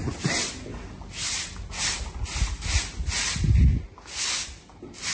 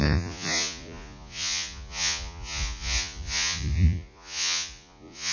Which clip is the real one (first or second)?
first